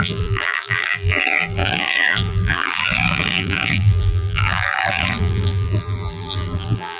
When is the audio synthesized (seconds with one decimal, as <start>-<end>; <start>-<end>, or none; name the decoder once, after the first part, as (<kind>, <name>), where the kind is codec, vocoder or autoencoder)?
0.0-7.0 (vocoder, BigVGAN v2)